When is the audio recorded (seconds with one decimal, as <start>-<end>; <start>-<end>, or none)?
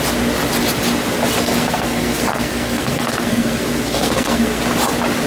0.0-1.4; 4.6-5.3